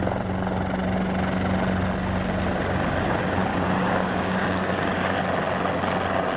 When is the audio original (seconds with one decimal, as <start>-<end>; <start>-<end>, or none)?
0.0-3.5; 5.2-6.4